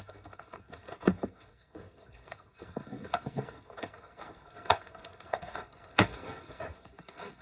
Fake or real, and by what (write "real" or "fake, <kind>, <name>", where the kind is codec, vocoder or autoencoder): fake, codec, SNAC